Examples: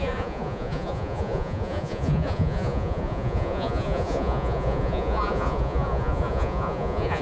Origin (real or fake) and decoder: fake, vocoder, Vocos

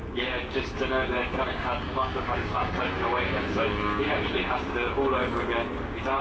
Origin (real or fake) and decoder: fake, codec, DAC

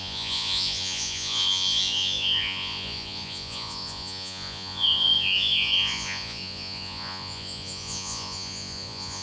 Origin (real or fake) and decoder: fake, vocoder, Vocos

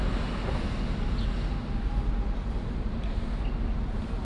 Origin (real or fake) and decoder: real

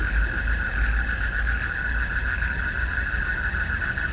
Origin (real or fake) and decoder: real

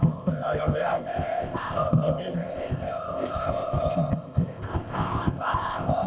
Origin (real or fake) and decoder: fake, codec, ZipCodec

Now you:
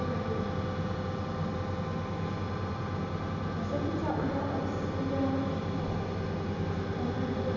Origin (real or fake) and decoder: real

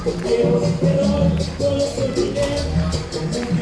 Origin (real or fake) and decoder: real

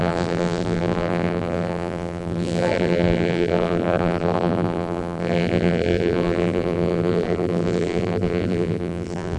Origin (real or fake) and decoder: fake, vocoder, BigVGAN v2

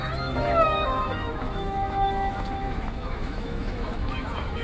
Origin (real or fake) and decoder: fake, autoencoder, DAC-VAE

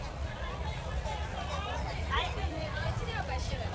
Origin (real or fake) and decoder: fake, vocoder, Vocos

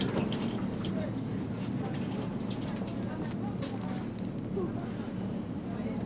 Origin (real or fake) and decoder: real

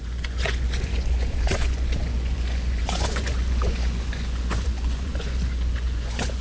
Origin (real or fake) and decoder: fake, vocoder, Vocos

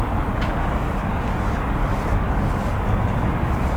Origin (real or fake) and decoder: fake, codec, DAC